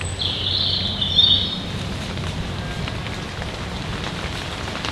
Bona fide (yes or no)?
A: yes